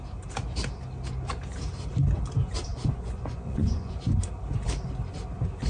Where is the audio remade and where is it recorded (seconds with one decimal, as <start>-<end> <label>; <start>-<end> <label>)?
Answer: 0.0-2.7 recorded; 2.7-3.9 remade; 3.9-5.7 recorded